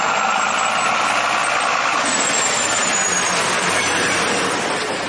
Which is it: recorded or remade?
recorded